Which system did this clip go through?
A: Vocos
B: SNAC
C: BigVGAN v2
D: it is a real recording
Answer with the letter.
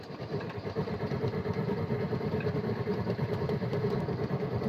D